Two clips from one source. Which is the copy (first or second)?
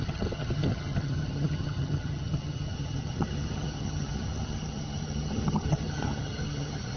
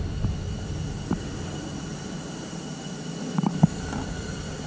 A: first